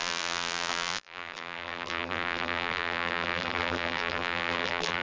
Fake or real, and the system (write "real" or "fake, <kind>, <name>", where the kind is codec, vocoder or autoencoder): fake, vocoder, BigVGAN v2